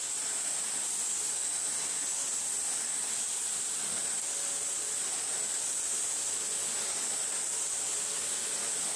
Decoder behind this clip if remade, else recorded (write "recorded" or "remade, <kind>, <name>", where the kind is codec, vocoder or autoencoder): recorded